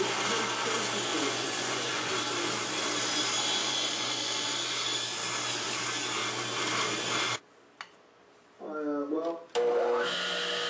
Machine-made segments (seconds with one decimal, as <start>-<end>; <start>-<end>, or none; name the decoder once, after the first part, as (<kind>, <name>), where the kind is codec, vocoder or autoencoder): 1.1-2.1 (vocoder, Vocos); 3.6-4.8